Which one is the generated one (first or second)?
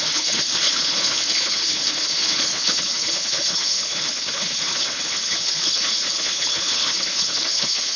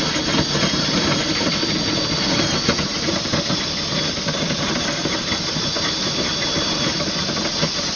first